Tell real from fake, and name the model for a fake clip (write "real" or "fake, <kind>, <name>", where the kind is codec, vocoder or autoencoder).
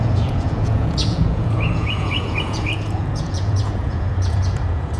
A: fake, vocoder, Vocos